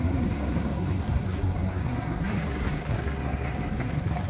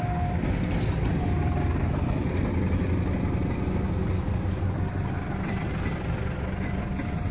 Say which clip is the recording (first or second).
second